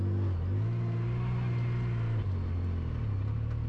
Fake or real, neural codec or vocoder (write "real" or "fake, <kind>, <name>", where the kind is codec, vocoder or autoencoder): real